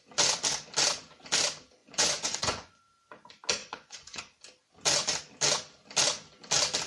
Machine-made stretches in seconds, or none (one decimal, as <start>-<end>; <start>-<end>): 1.8-2.8; 3.6-4.2